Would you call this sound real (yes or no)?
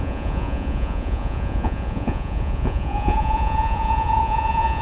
no